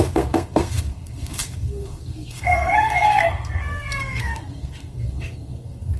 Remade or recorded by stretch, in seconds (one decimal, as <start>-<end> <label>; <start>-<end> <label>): 0.0-6.0 remade